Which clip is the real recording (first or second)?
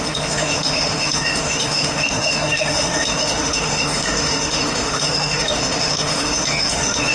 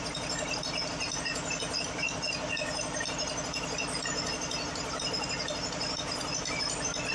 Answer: second